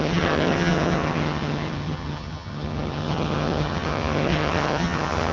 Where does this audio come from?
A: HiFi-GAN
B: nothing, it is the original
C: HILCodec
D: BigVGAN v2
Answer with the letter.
A